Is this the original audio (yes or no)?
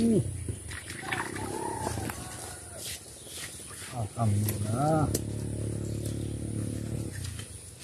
yes